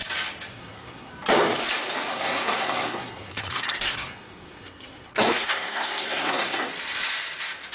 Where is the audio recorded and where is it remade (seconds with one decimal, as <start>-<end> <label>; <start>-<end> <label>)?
0.0-0.5 recorded; 0.5-1.1 remade; 1.1-2.1 recorded; 2.1-6.7 remade; 6.7-7.7 recorded